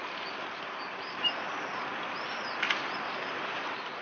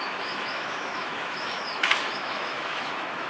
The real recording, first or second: first